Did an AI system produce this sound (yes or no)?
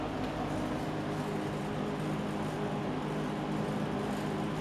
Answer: no